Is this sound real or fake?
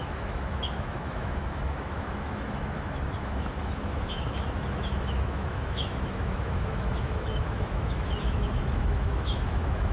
fake